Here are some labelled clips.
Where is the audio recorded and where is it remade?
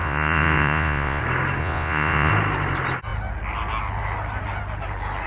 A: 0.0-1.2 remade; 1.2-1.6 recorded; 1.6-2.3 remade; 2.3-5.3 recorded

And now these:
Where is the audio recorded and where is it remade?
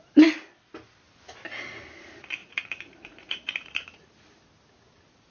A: 0.0-2.4 recorded; 2.4-4.1 remade; 4.1-5.3 recorded